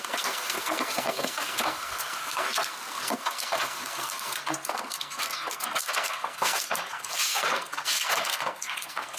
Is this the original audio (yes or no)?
no